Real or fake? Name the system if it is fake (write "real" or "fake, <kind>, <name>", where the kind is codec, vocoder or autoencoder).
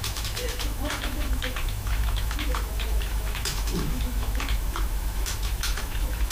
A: fake, autoencoder, DAC-VAE